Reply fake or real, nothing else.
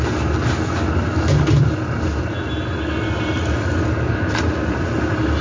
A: real